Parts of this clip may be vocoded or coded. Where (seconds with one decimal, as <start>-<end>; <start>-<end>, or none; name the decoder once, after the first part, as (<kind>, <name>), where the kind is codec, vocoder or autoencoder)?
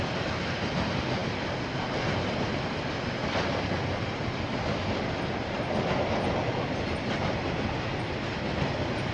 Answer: none